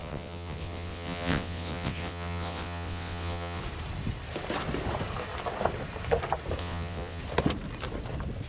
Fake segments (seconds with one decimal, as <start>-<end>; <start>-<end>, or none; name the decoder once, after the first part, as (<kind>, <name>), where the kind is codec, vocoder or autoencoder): 0.0-3.6 (vocoder, WaveNeXt); 6.6-7.2